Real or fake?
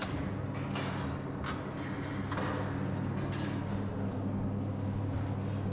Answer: real